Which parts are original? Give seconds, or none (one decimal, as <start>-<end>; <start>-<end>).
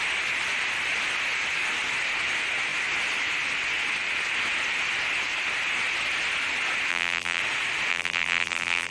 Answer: 0.0-6.9; 7.4-7.9